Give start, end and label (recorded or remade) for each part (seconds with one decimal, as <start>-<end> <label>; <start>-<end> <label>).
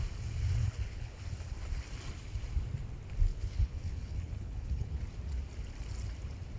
0.0-0.6 recorded; 0.6-1.2 remade; 1.2-3.3 recorded; 3.3-5.0 remade; 5.0-6.6 recorded